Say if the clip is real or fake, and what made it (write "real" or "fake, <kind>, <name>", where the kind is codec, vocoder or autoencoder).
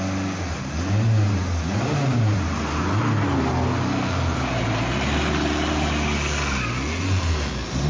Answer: real